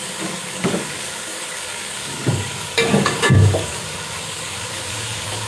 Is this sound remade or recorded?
remade